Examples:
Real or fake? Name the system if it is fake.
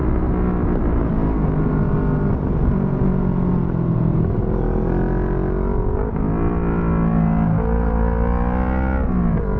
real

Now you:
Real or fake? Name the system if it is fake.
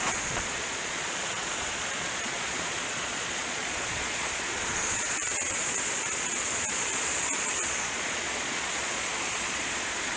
fake, vocoder, Vocos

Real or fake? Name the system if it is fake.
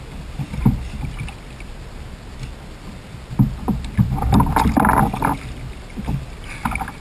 real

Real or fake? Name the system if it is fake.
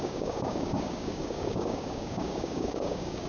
fake, codec, DAC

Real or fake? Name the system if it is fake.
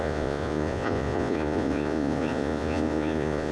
fake, vocoder, Vocos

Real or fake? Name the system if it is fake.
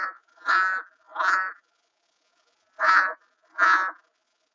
fake, vocoder, Vocos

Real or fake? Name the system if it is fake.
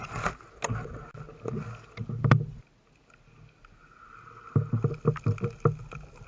real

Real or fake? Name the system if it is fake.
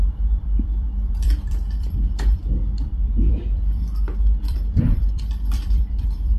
fake, vocoder, BigVGAN v2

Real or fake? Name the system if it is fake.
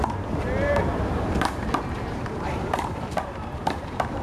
fake, vocoder, BigVGAN v2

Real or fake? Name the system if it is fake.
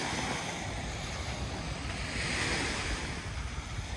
real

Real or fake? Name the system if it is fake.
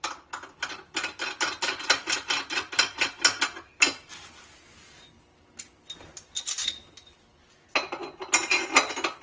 real